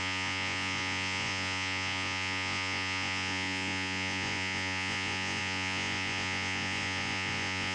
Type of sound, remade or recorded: remade